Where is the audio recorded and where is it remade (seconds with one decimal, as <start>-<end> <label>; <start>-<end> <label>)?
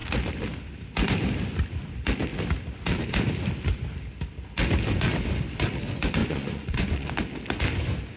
0.0-6.2 recorded; 6.2-7.1 remade; 7.1-8.2 recorded